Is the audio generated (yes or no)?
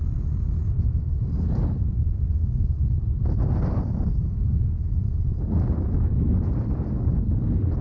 no